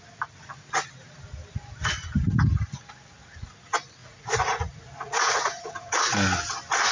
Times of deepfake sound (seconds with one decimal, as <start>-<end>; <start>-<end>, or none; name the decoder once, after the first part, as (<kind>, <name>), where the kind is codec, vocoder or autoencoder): 4.0-6.1 (vocoder, Vocos)